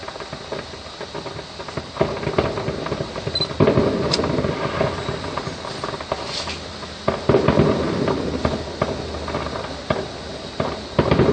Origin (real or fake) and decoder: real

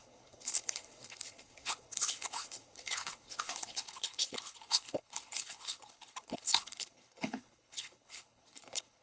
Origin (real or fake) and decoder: fake, codec, HILCodec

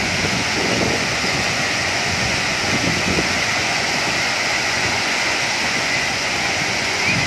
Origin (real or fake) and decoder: fake, vocoder, Vocos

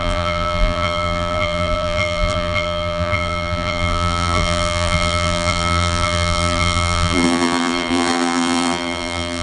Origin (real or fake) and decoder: fake, vocoder, BigVGAN v2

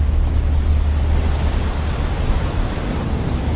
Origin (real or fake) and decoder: real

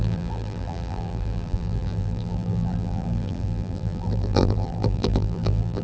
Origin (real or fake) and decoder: fake, vocoder, BigVGAN v2